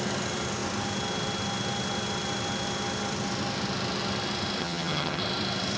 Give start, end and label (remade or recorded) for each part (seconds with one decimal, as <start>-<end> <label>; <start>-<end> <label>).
0.0-4.6 recorded; 4.6-5.2 remade; 5.2-5.8 recorded